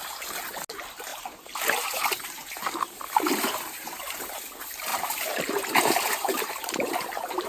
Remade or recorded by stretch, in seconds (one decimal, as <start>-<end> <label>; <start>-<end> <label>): 0.0-1.1 recorded; 1.1-4.3 remade; 4.3-4.9 recorded; 4.9-6.9 remade; 6.9-7.5 recorded

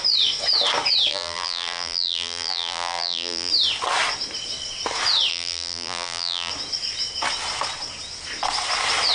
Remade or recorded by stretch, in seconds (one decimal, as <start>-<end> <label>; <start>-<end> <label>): 0.0-1.1 recorded; 1.1-3.5 remade; 3.5-5.3 recorded; 5.3-6.5 remade; 6.5-9.1 recorded

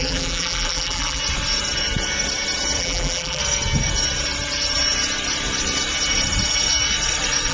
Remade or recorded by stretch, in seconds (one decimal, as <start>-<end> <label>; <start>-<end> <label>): 0.0-1.2 remade; 1.2-2.8 recorded; 2.8-3.4 remade; 3.4-7.5 recorded

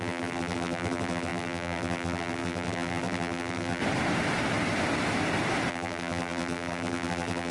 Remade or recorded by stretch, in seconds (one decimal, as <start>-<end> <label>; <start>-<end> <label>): 0.0-3.8 remade; 3.8-5.7 recorded; 5.7-7.5 remade

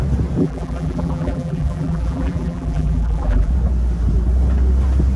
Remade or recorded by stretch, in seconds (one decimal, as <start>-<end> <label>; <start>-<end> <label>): 0.0-0.4 recorded; 0.4-3.5 remade; 3.5-5.2 recorded

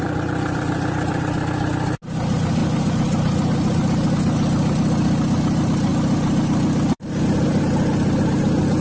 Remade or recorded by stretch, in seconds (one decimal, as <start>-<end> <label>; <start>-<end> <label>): 0.0-8.8 recorded

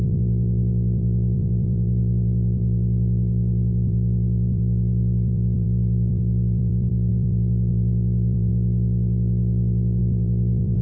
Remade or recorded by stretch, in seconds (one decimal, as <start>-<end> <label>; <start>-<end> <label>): 0.0-8.5 remade; 8.5-10.0 recorded; 10.0-10.8 remade